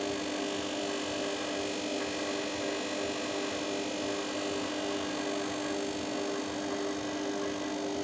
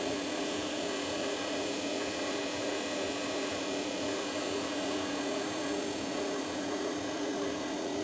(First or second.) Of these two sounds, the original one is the first